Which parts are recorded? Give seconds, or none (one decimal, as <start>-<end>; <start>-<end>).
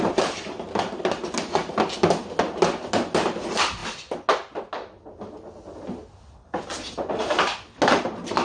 0.0-8.4